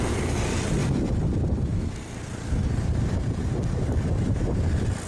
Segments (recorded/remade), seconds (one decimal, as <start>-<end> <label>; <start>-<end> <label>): 0.0-2.6 recorded; 2.6-4.6 remade; 4.6-5.1 recorded